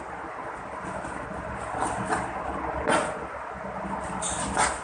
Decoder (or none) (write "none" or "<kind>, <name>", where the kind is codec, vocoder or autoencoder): none